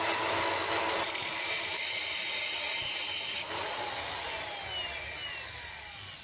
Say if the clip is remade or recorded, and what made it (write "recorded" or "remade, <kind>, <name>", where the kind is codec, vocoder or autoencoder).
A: recorded